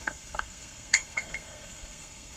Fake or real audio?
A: fake